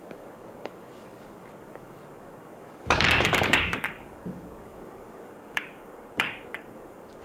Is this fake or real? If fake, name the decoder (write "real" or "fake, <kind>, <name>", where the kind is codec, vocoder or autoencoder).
fake, codec, DAC